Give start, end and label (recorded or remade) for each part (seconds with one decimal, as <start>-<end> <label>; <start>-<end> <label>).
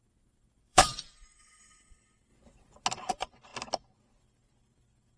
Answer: 0.0-2.3 remade; 2.3-3.1 recorded; 3.1-3.5 remade; 3.5-4.2 recorded; 4.2-5.2 remade